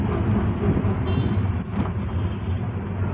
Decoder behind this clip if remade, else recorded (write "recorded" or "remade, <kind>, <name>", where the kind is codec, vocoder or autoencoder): recorded